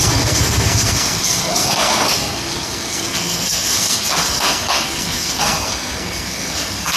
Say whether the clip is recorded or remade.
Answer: remade